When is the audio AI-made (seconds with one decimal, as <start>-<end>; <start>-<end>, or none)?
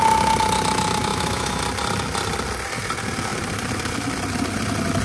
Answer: 1.1-1.6